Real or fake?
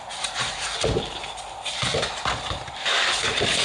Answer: real